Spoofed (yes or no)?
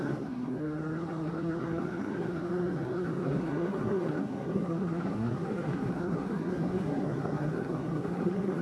yes